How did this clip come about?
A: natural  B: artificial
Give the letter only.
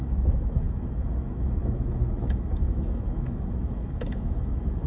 B